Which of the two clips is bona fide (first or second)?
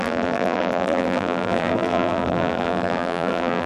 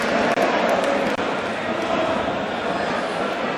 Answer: second